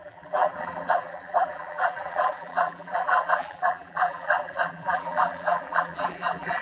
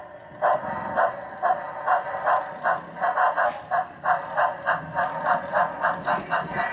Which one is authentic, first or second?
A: second